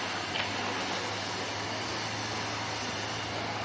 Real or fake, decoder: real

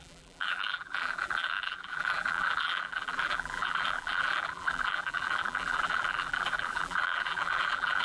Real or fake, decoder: fake, vocoder, BigVGAN v2